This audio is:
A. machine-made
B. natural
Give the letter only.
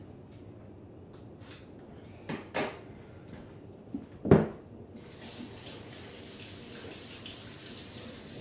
B